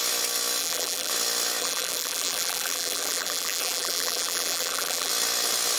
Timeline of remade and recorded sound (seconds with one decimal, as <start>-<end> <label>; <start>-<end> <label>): 0.0-0.6 recorded; 0.6-1.1 remade; 1.1-1.6 recorded; 1.6-5.1 remade; 5.1-5.8 recorded